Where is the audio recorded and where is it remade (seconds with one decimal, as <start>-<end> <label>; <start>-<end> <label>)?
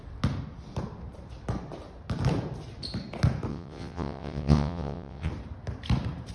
0.0-3.5 recorded; 3.5-5.3 remade; 5.3-6.3 recorded